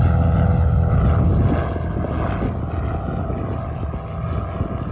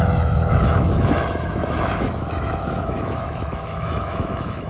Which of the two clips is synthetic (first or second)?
second